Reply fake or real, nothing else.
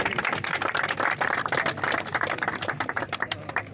real